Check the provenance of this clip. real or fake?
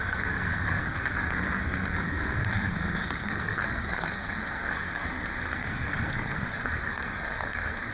fake